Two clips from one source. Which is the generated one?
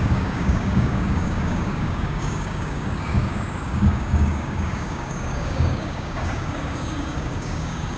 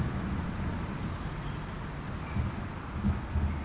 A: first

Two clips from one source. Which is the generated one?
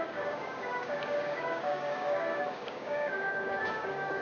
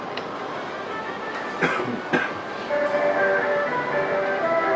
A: first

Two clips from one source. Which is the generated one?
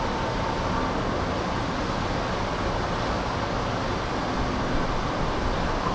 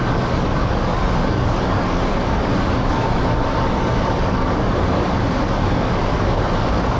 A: second